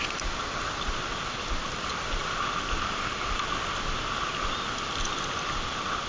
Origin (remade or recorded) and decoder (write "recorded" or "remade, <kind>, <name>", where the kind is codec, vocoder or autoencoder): recorded